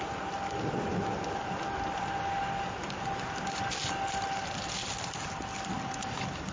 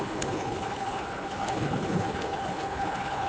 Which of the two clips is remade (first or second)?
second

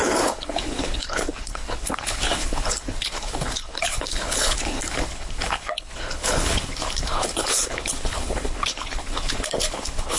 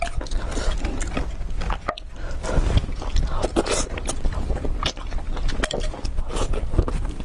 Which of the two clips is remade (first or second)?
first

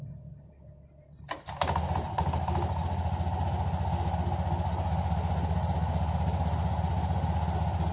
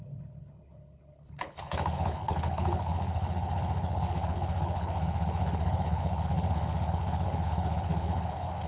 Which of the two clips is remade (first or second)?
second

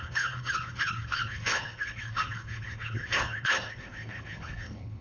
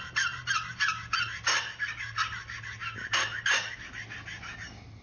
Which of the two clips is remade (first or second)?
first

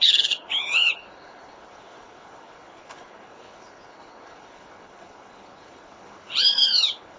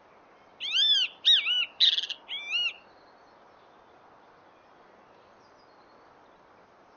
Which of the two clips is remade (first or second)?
first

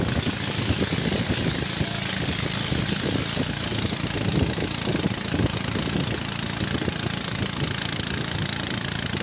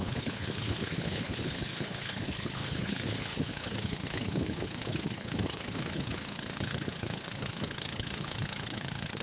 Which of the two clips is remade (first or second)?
second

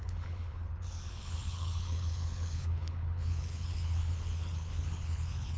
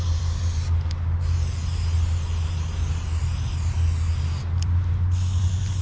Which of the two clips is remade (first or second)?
first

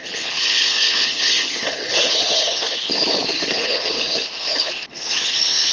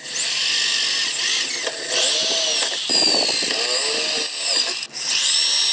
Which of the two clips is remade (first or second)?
first